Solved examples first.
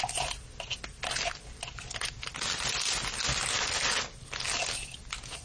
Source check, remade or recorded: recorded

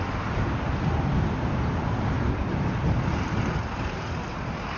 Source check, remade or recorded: recorded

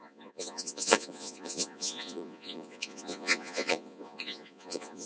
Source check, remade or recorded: remade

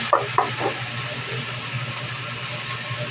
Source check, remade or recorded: recorded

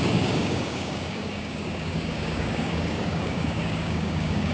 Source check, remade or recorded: remade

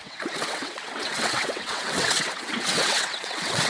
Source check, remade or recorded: remade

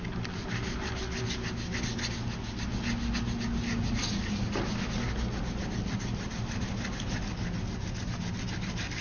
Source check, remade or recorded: recorded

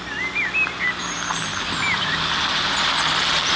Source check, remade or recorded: recorded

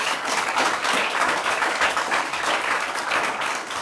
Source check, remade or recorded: remade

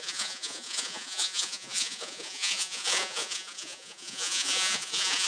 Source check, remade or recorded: remade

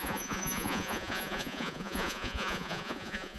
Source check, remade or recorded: remade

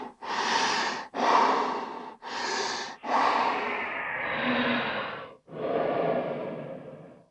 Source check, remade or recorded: remade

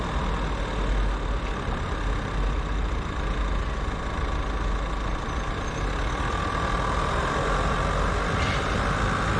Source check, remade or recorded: recorded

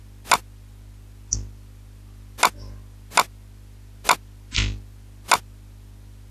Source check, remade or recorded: recorded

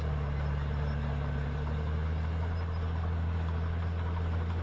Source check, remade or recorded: recorded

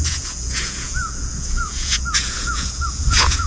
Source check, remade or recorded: remade